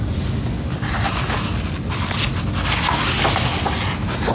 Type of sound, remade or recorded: recorded